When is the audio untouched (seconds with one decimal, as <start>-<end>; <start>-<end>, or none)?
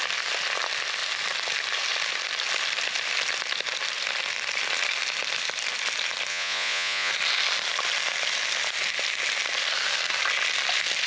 0.0-6.3; 7.1-11.1